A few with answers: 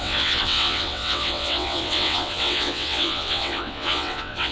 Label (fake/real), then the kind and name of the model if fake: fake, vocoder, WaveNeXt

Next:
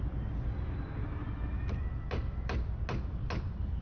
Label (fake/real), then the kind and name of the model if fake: real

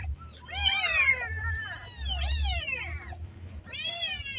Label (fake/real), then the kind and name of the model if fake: fake, vocoder, BigVGAN v2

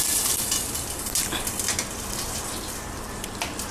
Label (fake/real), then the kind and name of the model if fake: real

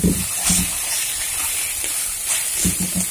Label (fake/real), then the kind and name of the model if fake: real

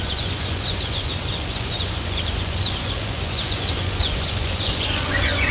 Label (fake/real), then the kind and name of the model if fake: fake, vocoder, Vocos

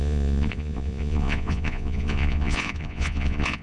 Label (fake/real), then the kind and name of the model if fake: fake, vocoder, Vocos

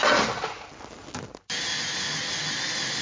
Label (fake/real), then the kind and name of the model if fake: real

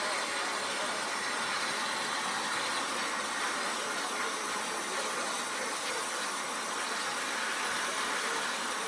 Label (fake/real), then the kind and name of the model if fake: real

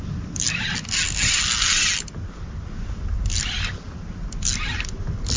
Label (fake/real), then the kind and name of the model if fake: real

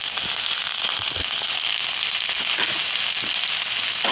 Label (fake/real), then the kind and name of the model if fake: real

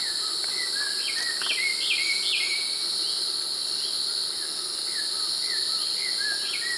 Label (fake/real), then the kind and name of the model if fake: real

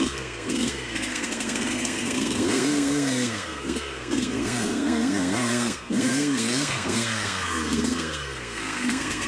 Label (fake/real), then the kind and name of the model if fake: fake, codec, SNAC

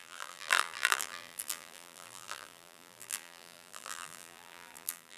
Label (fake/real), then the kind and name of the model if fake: fake, vocoder, BigVGAN v2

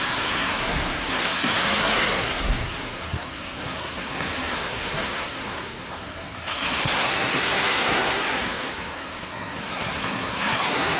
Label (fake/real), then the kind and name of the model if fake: fake, codec, SNAC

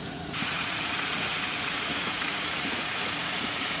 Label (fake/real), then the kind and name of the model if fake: fake, vocoder, Vocos